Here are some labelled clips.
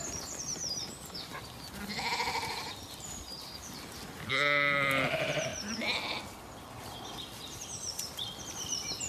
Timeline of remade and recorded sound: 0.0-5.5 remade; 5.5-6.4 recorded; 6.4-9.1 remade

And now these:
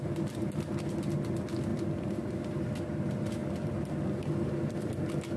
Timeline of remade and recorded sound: 0.0-1.7 recorded; 1.7-2.3 remade; 2.3-5.4 recorded

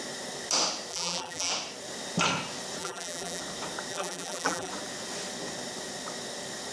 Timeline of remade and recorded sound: 0.0-0.9 recorded; 0.9-1.5 remade; 1.5-2.8 recorded; 2.8-3.4 remade; 3.4-3.9 recorded; 3.9-4.7 remade; 4.7-6.7 recorded

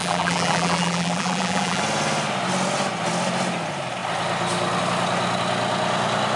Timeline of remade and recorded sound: 0.0-1.8 remade; 1.8-6.4 recorded

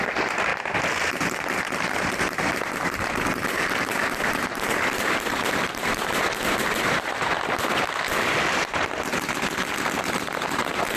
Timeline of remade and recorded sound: 0.0-0.5 recorded; 0.5-2.1 remade; 2.1-11.0 recorded

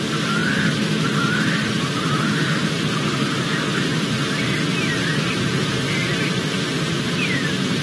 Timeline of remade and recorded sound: 0.0-0.4 remade; 0.4-2.0 recorded; 2.0-3.3 remade; 3.3-5.1 recorded; 5.1-5.6 remade; 5.6-6.2 recorded; 6.2-7.8 remade

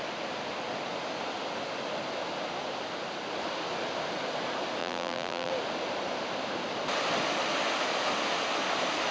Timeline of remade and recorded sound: 0.0-4.8 recorded; 4.8-5.5 remade; 5.5-9.1 recorded

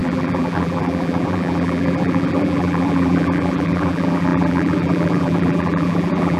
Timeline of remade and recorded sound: 0.0-6.4 remade